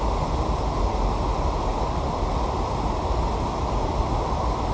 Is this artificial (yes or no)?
no